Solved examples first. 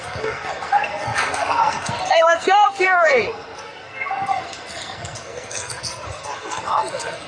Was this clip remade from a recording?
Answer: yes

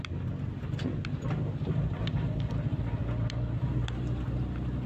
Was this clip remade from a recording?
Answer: no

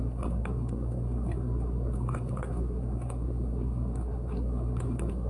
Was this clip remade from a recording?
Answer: yes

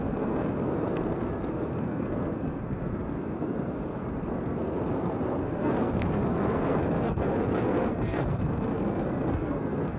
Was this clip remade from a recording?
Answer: yes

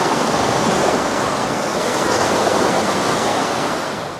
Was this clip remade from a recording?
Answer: yes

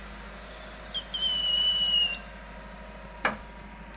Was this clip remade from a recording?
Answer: no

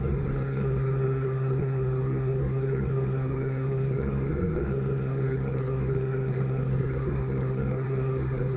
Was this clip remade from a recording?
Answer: yes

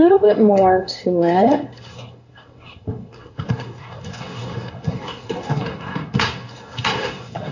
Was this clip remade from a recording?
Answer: yes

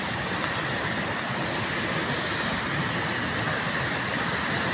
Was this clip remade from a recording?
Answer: no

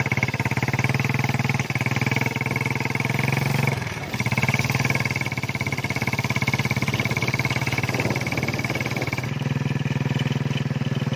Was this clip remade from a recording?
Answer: no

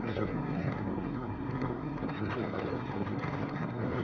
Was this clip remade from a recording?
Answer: yes